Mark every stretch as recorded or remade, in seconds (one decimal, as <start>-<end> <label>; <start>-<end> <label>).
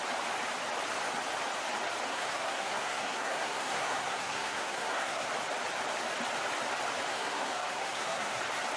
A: 0.0-2.1 recorded; 2.1-5.3 remade; 5.3-7.1 recorded; 7.1-8.4 remade; 8.4-8.8 recorded